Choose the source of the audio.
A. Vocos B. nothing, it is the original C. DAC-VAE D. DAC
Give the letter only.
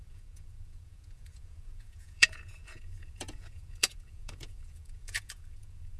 A